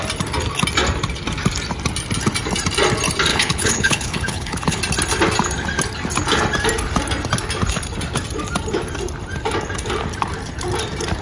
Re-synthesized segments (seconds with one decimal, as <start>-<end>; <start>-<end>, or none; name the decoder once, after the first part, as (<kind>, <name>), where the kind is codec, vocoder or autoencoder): 3.3-4.8 (codec, HILCodec)